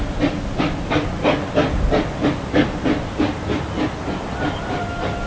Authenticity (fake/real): real